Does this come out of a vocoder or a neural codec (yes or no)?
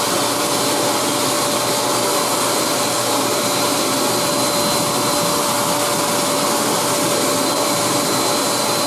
no